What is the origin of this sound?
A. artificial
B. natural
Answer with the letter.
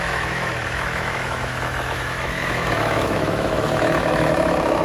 A